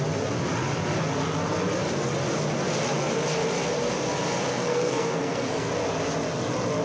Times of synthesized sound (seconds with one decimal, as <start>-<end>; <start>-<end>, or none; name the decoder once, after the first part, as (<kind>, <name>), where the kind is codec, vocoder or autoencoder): 4.5-5.7 (codec, SNAC)